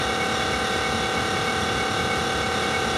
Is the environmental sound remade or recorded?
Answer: recorded